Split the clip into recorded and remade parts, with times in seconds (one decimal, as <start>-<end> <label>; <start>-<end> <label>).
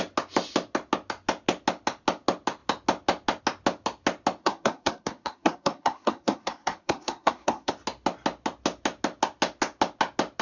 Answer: 0.0-4.4 recorded; 4.4-7.7 remade; 7.7-10.4 recorded